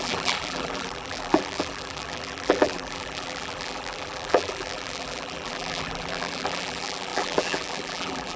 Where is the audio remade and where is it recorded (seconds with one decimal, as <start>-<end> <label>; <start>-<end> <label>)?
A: 0.0-8.4 remade